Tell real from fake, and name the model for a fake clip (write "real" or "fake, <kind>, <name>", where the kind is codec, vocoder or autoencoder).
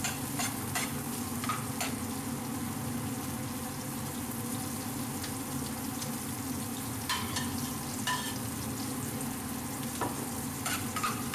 real